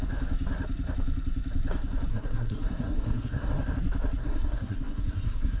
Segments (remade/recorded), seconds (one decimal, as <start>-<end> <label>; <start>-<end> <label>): 0.0-2.1 recorded; 2.1-3.5 remade; 3.5-4.2 recorded; 4.2-5.6 remade